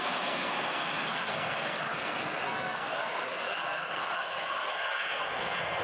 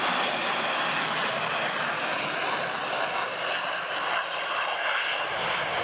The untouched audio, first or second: second